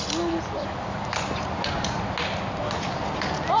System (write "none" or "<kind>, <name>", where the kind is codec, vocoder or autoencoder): none